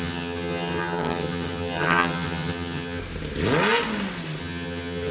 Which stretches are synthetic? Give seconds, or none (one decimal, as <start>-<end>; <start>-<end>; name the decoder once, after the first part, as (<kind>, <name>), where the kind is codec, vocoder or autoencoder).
0.0-3.0 (vocoder, HiFi-GAN); 4.4-5.1